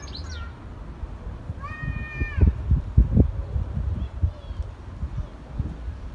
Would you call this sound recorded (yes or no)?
yes